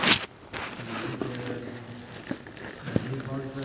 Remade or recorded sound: recorded